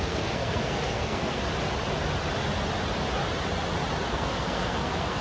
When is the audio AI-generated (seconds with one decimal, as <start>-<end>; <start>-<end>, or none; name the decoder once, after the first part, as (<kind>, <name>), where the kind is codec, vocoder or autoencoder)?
0.0-1.4 (codec, SNAC); 4.1-5.2